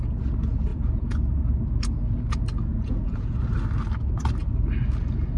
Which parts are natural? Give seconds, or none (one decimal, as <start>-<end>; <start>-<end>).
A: 0.0-0.7; 1.5-2.7; 3.3-5.4